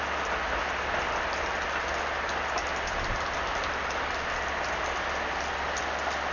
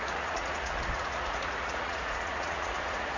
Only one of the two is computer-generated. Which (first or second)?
second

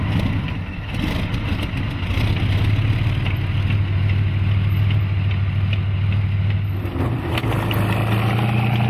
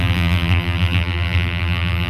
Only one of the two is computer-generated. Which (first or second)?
second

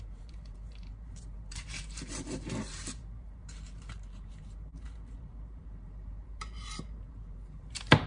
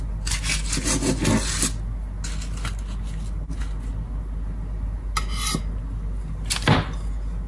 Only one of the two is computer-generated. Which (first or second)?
first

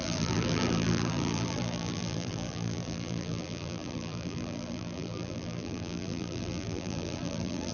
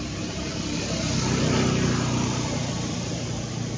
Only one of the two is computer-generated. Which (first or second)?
first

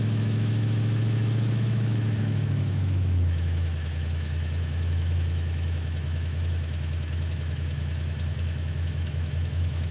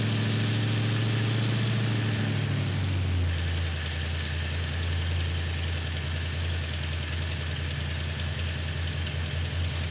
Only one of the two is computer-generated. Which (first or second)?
first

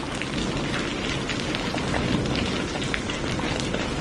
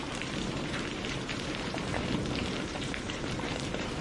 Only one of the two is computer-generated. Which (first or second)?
second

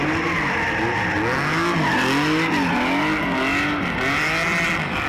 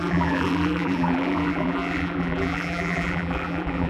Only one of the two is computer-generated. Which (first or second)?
second